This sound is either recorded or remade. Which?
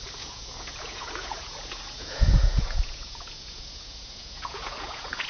remade